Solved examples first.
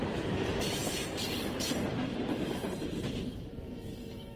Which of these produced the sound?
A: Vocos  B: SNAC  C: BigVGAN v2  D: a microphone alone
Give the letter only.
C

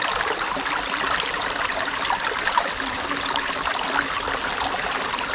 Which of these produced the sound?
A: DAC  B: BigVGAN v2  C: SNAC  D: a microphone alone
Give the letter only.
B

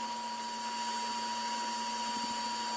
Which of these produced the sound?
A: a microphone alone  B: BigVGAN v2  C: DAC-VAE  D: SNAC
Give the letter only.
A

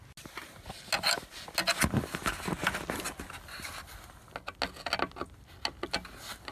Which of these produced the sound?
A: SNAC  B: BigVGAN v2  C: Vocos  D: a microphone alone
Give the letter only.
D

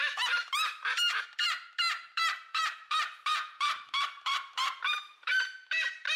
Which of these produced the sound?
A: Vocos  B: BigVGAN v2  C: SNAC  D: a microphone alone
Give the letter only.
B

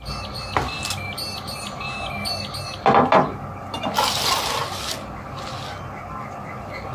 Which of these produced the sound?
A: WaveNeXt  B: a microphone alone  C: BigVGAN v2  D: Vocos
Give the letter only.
B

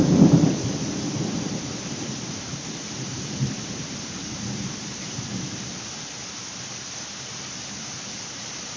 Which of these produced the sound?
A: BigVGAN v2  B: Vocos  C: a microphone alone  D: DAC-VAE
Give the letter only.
A